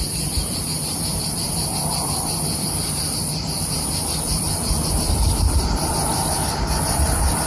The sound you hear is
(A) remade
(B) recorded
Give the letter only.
A